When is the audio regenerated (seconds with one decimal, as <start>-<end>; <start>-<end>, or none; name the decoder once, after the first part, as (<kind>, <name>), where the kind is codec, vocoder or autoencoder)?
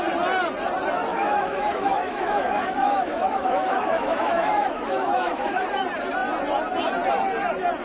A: 1.1-5.6 (autoencoder, DAC-VAE)